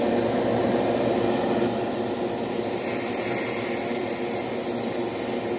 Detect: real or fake real